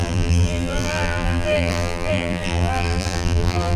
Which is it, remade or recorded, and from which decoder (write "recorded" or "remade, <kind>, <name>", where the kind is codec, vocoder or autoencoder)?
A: remade, vocoder, BigVGAN v2